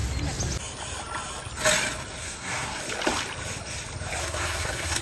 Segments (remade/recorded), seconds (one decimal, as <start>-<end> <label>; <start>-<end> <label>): 0.0-2.2 recorded; 2.2-2.8 remade; 2.8-4.2 recorded; 4.2-5.0 remade